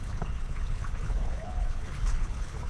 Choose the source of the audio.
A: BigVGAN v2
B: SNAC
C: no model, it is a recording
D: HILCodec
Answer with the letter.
D